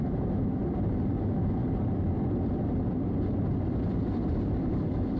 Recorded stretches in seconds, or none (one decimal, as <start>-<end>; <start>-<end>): 0.6-1.2; 1.6-4.7